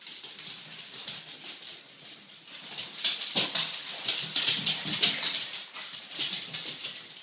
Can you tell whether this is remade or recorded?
recorded